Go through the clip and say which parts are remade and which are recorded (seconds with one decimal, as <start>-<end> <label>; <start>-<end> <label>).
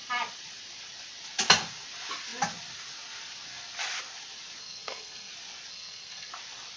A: 0.0-4.6 recorded; 4.6-5.3 remade; 5.3-5.7 recorded; 5.7-6.3 remade; 6.3-6.8 recorded